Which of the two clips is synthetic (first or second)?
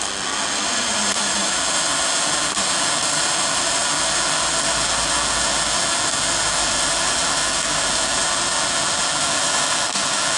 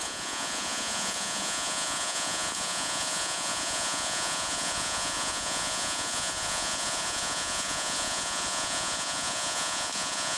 second